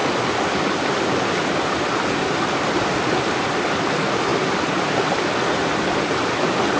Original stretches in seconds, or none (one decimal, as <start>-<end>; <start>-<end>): 0.0-6.8